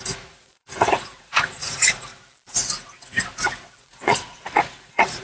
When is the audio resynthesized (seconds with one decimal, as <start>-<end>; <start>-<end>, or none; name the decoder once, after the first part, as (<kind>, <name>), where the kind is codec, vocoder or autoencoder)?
0.0-2.1 (vocoder, Vocos); 3.8-5.2